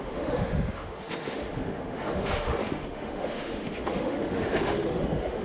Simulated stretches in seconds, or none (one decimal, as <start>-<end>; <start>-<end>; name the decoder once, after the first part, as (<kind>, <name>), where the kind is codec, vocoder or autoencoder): 0.0-5.4 (autoencoder, DAC-VAE)